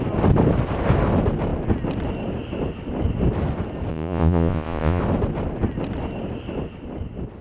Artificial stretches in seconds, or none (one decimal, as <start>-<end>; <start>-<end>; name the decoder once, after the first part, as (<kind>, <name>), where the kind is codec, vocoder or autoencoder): 3.9-5.0 (vocoder, Vocos)